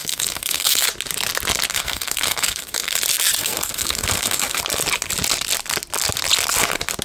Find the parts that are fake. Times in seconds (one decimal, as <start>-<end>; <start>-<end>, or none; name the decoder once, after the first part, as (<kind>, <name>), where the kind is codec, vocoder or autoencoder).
0.0-0.9 (codec, SNAC); 1.7-3.0; 3.4-4.6